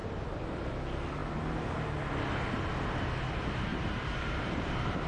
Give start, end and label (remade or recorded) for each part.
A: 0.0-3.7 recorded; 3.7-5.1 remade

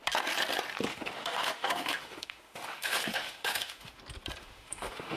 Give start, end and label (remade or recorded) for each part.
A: 0.0-0.9 recorded; 0.9-4.0 remade; 4.0-4.4 recorded; 4.4-5.2 remade

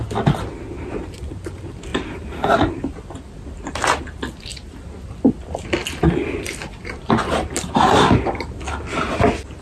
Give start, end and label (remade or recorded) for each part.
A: 0.0-1.9 recorded; 1.9-3.5 remade; 3.5-4.5 recorded; 4.5-8.6 remade; 8.6-9.6 recorded

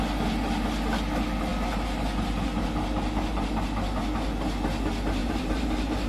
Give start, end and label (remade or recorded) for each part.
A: 0.0-5.2 recorded; 5.2-6.1 remade

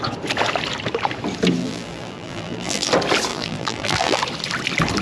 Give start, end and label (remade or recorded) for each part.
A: 0.0-1.6 recorded; 1.6-2.9 remade; 2.9-3.3 recorded; 3.3-4.2 remade; 4.2-5.0 recorded

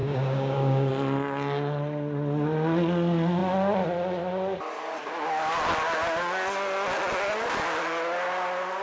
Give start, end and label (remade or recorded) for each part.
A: 0.0-0.9 remade; 0.9-8.8 recorded